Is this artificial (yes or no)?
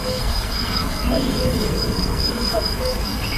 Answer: yes